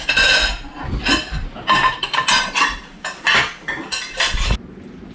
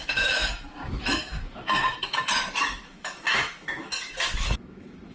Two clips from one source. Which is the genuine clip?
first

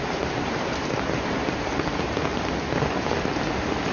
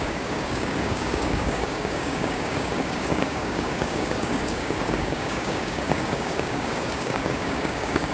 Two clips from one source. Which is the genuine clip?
first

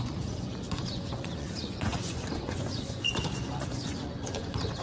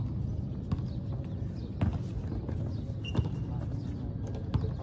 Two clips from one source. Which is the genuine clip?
second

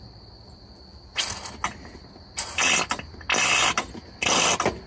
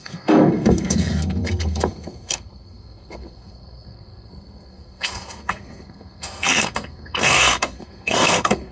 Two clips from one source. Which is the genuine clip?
first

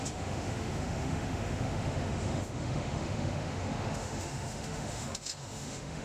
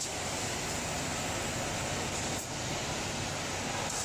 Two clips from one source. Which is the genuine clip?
second